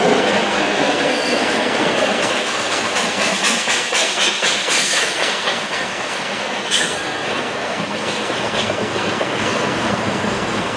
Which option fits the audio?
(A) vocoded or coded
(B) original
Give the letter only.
A